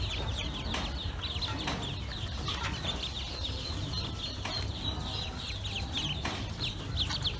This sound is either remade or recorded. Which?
recorded